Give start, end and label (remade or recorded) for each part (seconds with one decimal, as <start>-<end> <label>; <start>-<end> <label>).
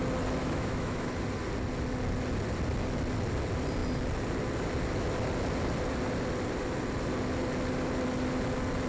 0.0-0.4 recorded; 0.4-1.1 remade; 1.1-8.9 recorded